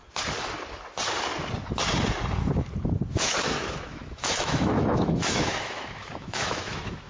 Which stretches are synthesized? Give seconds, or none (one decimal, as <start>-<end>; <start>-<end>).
3.1-7.1